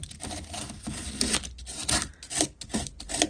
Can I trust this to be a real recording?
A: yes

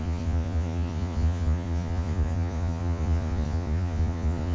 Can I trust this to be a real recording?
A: no